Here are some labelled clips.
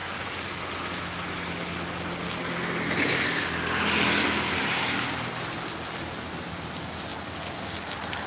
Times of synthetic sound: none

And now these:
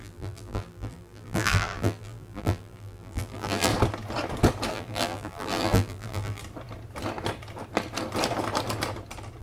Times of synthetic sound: 0.0-3.7 (vocoder, BigVGAN v2); 4.7-6.4